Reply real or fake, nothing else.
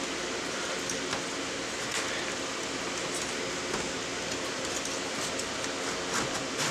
real